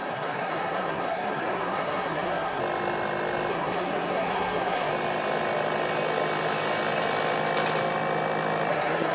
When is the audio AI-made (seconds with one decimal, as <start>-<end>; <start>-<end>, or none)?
0.0-2.6; 3.5-4.9; 8.7-9.1